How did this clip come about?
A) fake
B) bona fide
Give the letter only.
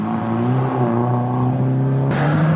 B